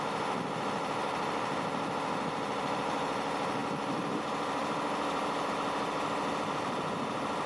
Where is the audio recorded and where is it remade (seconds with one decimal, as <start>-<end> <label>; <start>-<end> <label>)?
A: 0.0-3.6 recorded; 3.6-5.5 remade; 5.5-7.5 recorded